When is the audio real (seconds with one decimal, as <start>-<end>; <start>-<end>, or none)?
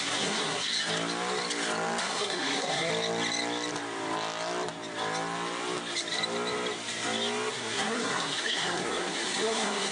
0.7-2.0; 2.9-7.5